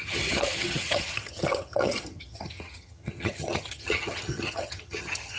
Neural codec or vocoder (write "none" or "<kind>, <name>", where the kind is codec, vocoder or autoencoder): vocoder, HiFi-GAN